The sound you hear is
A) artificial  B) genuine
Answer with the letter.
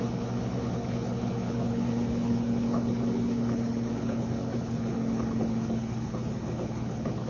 A